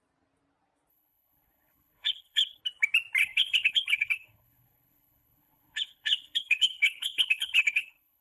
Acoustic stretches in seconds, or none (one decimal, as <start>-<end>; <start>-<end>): 0.0-0.9; 2.6-3.2